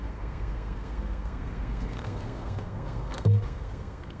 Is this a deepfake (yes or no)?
yes